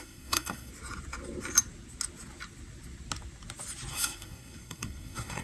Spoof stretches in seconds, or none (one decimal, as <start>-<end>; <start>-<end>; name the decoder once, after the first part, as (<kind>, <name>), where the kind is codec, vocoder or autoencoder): 0.0-0.7 (codec, SNAC); 3.9-5.4